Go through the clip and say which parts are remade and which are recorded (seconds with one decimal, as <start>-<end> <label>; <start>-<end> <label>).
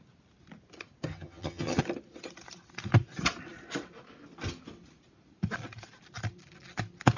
0.0-1.1 recorded; 1.1-1.8 remade; 1.8-7.2 recorded